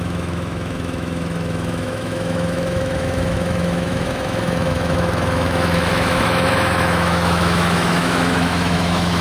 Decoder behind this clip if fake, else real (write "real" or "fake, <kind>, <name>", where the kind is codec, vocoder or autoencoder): fake, autoencoder, DAC-VAE